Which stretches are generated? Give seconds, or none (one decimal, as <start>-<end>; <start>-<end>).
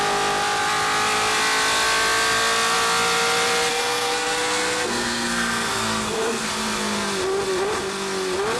3.7-6.5